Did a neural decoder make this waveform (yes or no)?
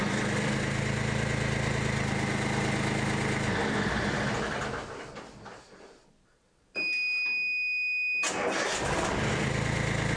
no